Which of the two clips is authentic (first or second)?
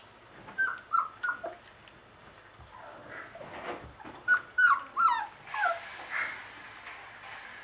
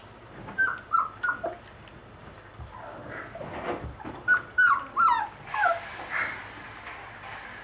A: first